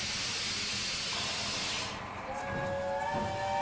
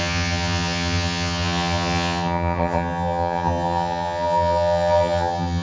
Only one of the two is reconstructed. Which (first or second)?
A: second